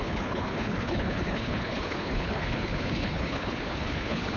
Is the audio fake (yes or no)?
yes